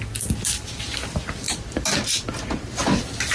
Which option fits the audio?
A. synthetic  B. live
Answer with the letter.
B